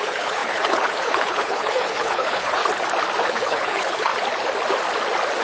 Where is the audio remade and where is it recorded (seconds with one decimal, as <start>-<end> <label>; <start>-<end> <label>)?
0.0-2.6 remade; 2.6-3.3 recorded; 3.3-4.1 remade; 4.1-5.4 recorded